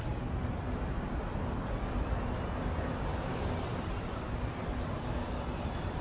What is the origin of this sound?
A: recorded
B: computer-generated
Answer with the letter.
B